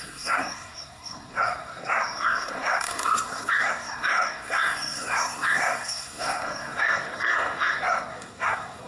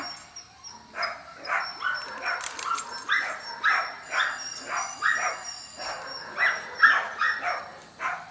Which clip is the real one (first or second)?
second